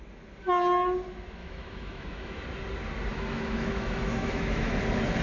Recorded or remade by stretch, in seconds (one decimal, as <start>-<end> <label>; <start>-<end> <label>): 0.0-1.4 recorded; 1.4-2.4 remade; 2.4-3.1 recorded; 3.1-4.7 remade; 4.7-5.2 recorded